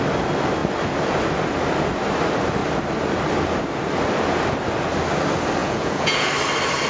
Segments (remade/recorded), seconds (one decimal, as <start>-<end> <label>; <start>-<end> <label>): 0.0-5.6 recorded; 5.6-6.3 remade; 6.3-6.9 recorded